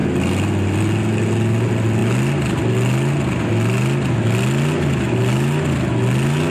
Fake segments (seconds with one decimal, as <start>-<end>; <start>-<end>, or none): none